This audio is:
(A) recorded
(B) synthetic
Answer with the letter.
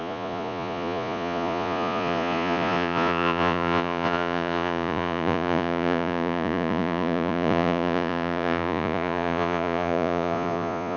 B